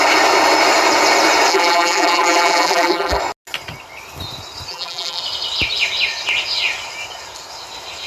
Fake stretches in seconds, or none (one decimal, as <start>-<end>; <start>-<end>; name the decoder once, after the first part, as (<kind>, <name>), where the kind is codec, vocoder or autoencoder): 1.5-3.2 (vocoder, BigVGAN v2); 4.7-5.2